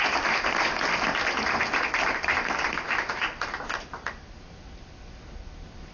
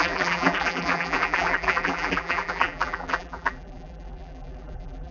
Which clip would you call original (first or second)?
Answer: first